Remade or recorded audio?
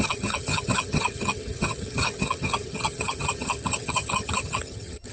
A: remade